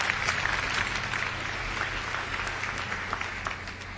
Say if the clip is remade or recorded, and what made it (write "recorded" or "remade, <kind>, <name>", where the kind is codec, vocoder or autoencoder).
recorded